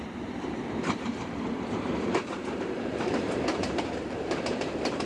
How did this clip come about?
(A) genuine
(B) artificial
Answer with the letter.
B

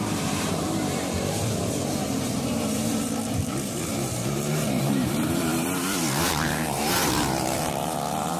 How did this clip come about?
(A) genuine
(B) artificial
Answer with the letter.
B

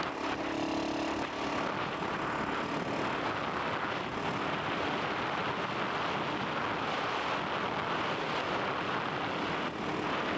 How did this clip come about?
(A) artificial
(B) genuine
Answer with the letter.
B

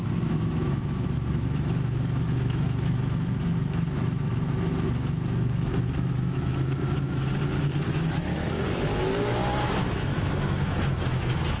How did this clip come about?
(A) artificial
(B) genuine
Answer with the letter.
A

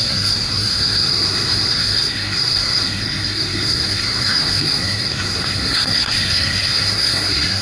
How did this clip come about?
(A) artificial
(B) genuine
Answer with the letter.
A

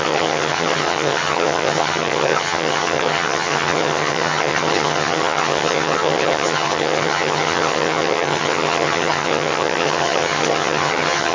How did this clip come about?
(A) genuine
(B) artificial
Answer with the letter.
B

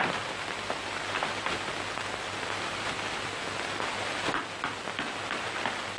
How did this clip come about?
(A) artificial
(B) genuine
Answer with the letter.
B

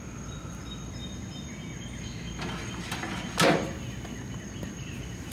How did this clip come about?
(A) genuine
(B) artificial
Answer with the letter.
A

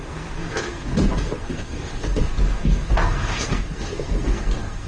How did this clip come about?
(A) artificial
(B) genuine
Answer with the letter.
A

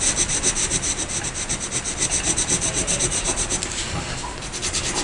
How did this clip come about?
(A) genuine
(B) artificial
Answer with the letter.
A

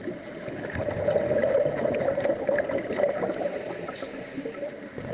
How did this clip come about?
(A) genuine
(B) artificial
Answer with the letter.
A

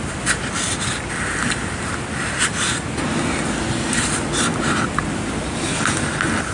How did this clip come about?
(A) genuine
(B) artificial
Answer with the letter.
A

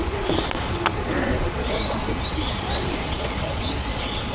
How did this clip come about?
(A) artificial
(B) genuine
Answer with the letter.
A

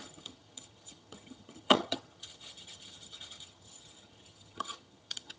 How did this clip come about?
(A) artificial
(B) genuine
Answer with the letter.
A